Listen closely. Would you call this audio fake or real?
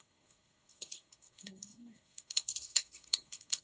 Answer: fake